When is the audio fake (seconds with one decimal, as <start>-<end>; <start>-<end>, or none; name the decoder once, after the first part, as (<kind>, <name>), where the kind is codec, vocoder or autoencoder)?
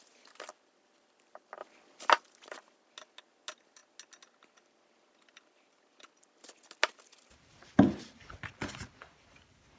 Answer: none